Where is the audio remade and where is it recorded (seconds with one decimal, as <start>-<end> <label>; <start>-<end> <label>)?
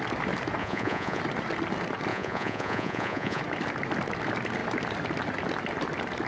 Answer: 0.0-0.6 recorded; 0.6-1.2 remade; 1.2-2.1 recorded; 2.1-3.4 remade; 3.4-6.3 recorded